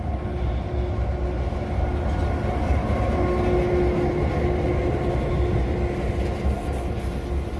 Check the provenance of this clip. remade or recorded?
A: recorded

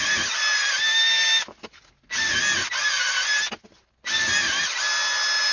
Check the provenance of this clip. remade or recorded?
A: recorded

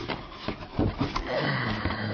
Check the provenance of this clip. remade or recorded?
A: recorded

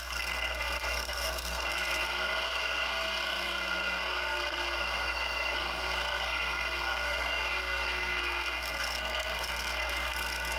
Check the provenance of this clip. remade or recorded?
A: remade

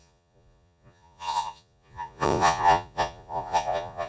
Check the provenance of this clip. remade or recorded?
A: remade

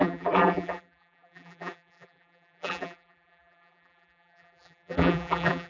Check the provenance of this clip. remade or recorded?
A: remade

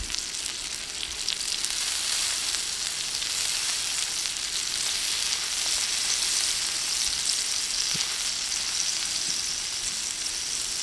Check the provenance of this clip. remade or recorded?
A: recorded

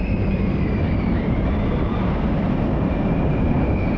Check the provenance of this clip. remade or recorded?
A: remade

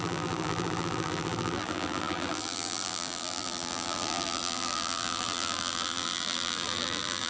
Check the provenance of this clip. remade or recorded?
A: remade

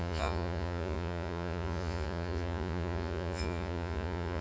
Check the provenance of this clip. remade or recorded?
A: remade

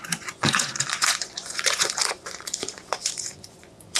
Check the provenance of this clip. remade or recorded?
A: remade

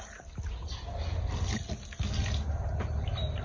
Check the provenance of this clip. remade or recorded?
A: recorded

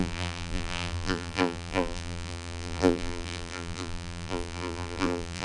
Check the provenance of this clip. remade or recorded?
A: remade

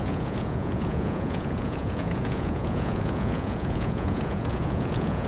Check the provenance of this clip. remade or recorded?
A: remade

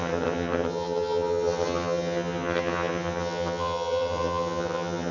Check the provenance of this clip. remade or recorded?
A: remade